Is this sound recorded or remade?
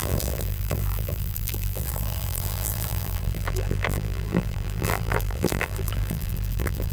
remade